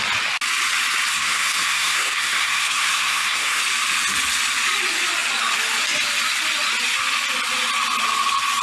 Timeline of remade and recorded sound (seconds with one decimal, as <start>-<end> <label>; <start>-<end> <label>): 0.0-1.1 recorded; 1.1-3.6 remade; 3.6-8.6 recorded